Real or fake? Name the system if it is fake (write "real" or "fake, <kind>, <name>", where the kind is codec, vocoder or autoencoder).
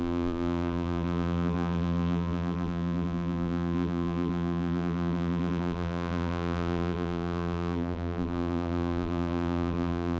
fake, vocoder, BigVGAN v2